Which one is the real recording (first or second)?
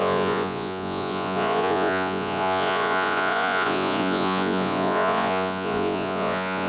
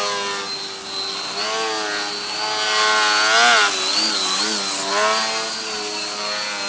second